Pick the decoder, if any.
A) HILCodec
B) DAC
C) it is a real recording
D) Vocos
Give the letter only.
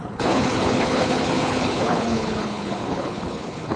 A